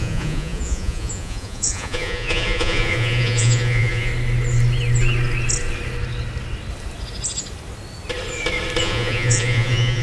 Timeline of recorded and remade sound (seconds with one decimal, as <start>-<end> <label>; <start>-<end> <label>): 0.0-4.1 remade; 4.1-8.8 recorded; 8.8-10.0 remade